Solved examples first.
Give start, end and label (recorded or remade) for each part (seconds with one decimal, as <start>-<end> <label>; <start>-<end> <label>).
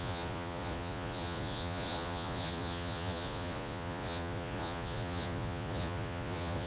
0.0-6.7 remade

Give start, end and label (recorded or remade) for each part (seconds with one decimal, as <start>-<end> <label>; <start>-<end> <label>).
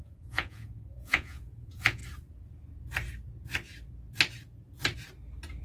0.0-2.0 remade; 2.0-5.6 recorded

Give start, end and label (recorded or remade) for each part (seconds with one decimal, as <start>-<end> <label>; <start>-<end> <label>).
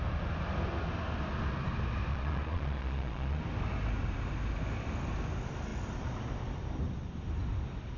0.0-2.1 recorded; 2.1-3.4 remade; 3.4-8.0 recorded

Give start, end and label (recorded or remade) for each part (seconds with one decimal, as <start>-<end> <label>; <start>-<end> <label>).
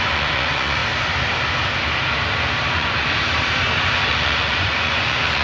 0.0-0.8 remade; 0.8-2.7 recorded; 2.7-3.2 remade; 3.2-4.1 recorded; 4.1-5.4 remade